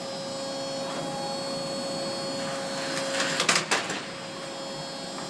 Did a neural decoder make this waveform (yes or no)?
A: no